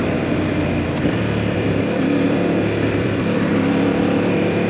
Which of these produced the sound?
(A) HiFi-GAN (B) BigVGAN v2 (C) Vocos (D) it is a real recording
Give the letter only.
B